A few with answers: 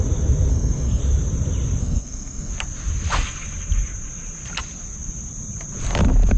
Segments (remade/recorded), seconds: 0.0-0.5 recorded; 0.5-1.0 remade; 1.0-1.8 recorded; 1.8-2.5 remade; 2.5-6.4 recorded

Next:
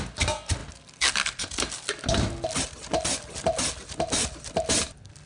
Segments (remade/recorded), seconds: 0.0-5.3 recorded

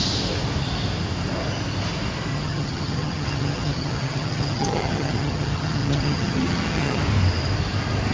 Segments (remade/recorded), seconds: 0.0-2.3 recorded; 2.3-7.0 remade; 7.0-8.1 recorded